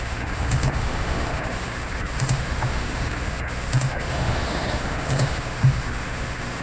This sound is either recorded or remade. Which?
remade